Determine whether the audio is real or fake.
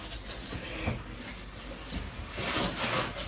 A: real